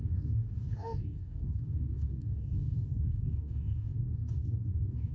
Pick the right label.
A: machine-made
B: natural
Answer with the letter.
A